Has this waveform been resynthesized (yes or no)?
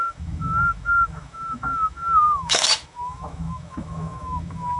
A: yes